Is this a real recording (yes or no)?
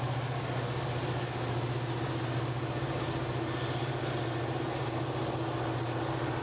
yes